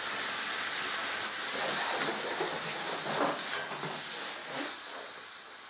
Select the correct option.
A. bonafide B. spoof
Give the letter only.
A